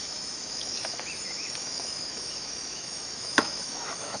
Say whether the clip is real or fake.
fake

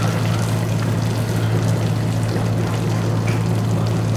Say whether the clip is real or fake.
real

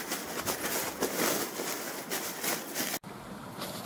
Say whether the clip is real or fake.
real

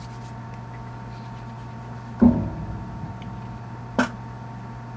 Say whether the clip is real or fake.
real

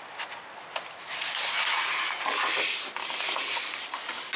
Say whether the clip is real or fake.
real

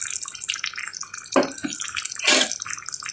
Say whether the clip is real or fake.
real